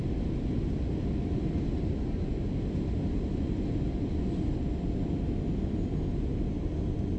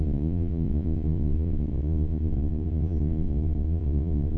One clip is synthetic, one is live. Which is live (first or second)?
first